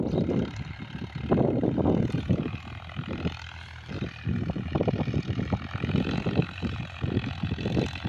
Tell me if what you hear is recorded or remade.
recorded